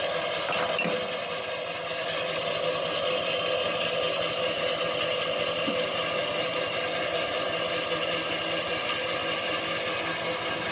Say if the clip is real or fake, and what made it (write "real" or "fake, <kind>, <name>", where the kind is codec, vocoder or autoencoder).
real